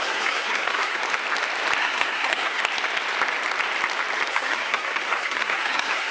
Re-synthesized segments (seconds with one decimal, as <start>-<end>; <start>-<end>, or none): 0.0-1.0; 1.8-2.6; 4.3-6.1